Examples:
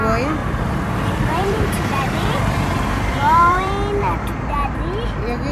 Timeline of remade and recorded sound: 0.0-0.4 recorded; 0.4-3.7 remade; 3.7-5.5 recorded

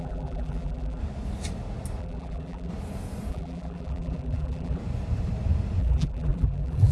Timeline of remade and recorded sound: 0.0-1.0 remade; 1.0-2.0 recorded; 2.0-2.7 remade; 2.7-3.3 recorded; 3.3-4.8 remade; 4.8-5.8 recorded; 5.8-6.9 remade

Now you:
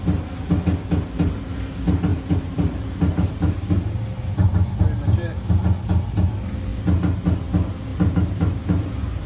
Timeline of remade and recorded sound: 0.0-2.1 recorded; 2.1-5.5 remade; 5.5-7.9 recorded; 7.9-9.3 remade

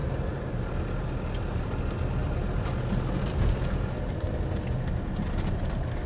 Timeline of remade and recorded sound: 0.0-2.2 recorded; 2.2-4.3 remade; 4.3-6.1 recorded